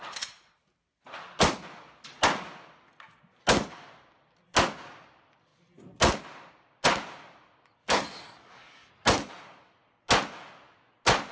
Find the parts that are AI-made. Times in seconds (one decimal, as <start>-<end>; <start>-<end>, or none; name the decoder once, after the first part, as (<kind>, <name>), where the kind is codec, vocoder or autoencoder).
7.8-8.9 (codec, DAC)